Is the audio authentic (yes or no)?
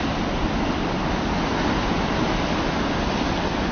yes